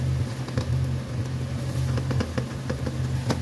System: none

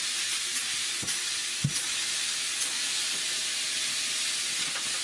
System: none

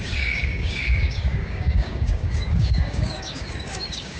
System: codec, DAC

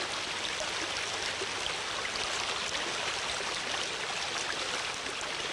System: none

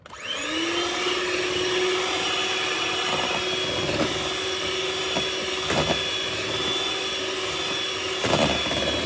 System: none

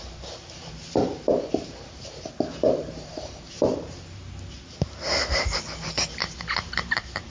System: vocoder, BigVGAN v2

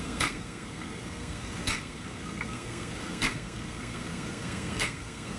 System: codec, SNAC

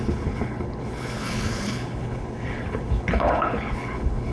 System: codec, HILCodec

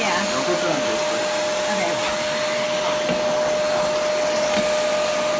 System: none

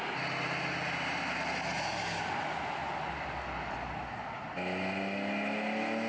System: none